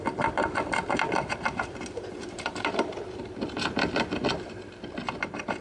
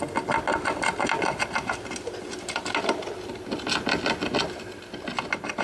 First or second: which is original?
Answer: second